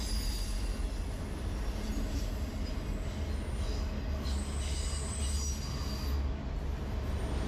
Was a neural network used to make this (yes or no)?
no